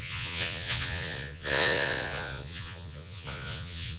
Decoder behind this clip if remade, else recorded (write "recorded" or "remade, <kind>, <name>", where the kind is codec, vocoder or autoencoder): remade, vocoder, Vocos